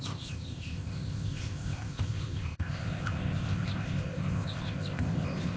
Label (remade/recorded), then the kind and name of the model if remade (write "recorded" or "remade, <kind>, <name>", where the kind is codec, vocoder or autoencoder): remade, codec, ZipCodec